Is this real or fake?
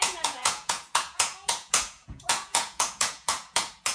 fake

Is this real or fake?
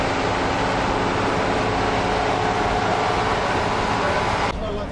real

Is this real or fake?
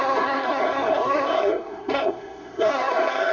fake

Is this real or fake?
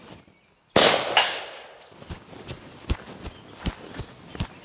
real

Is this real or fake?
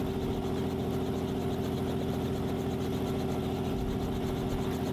real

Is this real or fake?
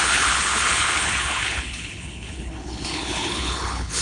fake